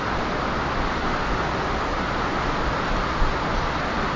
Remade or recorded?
recorded